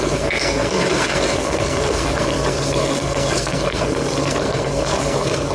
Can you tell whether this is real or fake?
fake